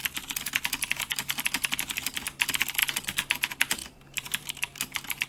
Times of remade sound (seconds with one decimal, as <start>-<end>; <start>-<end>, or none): 0.0-1.4; 2.8-3.3; 3.8-4.5